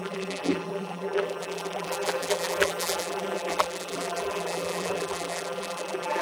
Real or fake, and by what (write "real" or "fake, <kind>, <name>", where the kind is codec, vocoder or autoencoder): fake, vocoder, BigVGAN v2